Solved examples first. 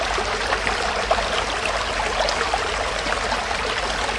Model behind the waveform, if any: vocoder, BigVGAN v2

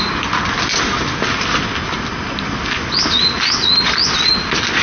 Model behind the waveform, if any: none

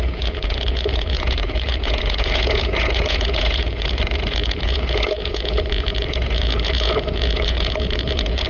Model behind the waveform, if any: vocoder, Vocos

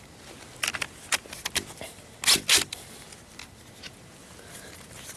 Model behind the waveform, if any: none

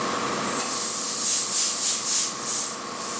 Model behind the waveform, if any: none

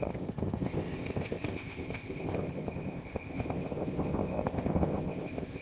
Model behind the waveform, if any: codec, ZipCodec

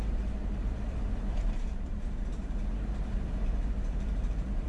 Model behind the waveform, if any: vocoder, BigVGAN v2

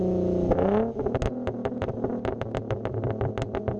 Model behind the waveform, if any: none